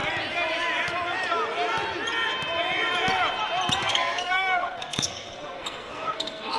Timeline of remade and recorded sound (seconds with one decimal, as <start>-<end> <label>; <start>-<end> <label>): 0.0-3.8 recorded; 3.8-6.6 remade